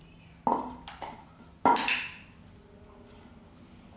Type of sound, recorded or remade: recorded